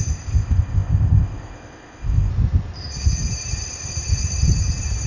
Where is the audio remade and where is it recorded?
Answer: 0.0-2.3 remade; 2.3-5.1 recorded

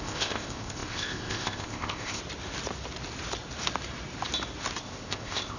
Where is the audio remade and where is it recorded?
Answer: 0.0-2.2 remade; 2.2-4.8 recorded; 4.8-5.6 remade

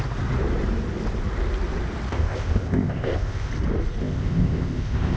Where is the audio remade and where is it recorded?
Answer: 0.0-2.1 recorded; 2.1-3.5 remade; 3.5-4.0 recorded; 4.0-5.2 remade

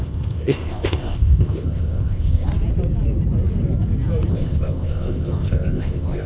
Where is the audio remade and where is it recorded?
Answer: 0.0-2.5 remade; 2.5-4.3 recorded; 4.3-6.3 remade

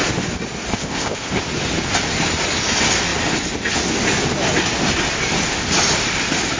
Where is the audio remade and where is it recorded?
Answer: 0.0-0.7 recorded; 0.7-1.4 remade; 1.4-6.6 recorded

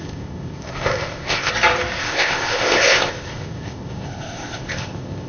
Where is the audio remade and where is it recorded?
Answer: 0.0-1.5 remade; 1.5-2.0 recorded; 2.0-5.3 remade

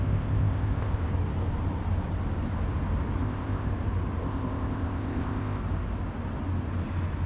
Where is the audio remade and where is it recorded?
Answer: 0.0-1.1 remade; 1.1-3.2 recorded; 3.2-3.7 remade; 3.7-4.2 recorded; 4.2-5.6 remade; 5.6-7.3 recorded

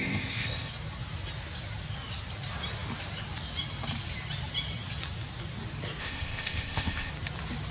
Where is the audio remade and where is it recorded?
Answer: 0.0-0.7 remade; 0.7-6.0 recorded; 6.0-7.1 remade; 7.1-7.7 recorded